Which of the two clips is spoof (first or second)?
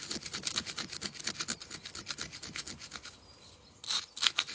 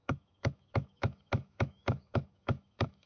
second